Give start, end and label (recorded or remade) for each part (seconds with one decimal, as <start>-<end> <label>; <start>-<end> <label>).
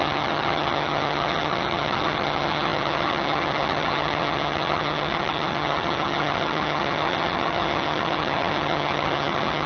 0.0-9.7 remade